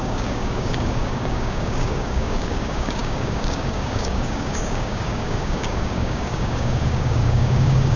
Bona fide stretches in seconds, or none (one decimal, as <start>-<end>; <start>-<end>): none